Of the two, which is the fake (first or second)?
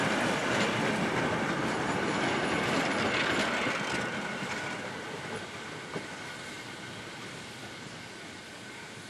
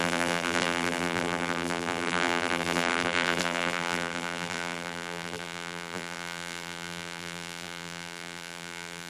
second